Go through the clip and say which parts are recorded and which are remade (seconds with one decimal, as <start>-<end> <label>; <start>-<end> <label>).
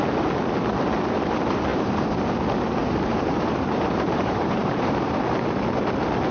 0.0-1.7 recorded; 1.7-2.2 remade; 2.2-2.8 recorded; 2.8-5.2 remade; 5.2-6.3 recorded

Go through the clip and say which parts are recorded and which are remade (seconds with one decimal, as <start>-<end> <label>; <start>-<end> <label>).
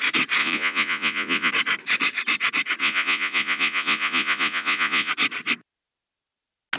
0.0-0.4 recorded; 0.4-1.5 remade; 1.5-2.8 recorded; 2.8-5.1 remade; 5.1-6.8 recorded